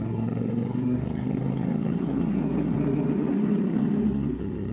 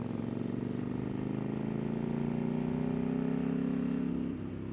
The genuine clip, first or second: second